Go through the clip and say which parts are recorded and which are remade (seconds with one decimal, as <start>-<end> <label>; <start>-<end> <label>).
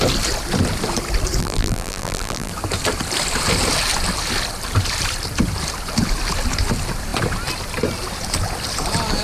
0.0-1.4 recorded; 1.4-2.5 remade; 2.5-9.2 recorded